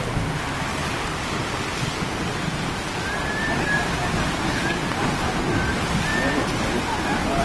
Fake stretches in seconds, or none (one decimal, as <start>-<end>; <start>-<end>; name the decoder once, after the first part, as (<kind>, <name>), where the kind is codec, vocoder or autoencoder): 4.8-5.3 (vocoder, BigVGAN v2)